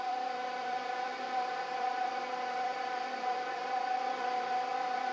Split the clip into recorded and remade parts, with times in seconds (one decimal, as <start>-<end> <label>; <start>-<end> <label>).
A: 0.0-5.1 remade